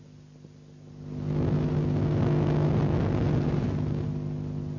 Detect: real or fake real